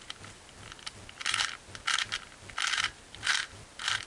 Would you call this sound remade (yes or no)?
no